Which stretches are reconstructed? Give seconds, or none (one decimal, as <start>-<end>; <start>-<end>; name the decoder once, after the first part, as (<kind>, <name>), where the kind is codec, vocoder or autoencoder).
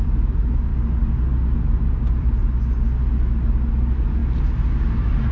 0.0-0.7 (vocoder, BigVGAN v2); 1.9-2.4; 3.8-4.2